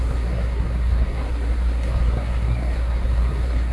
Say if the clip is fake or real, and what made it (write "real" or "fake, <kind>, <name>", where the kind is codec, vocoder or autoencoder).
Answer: fake, codec, SNAC